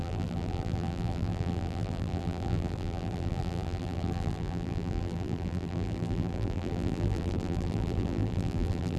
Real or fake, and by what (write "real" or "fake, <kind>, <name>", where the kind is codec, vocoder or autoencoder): fake, vocoder, BigVGAN v2